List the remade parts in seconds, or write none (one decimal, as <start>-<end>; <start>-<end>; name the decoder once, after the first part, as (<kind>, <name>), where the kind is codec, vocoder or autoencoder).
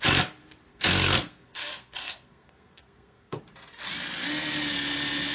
0.7-3.4 (codec, SNAC)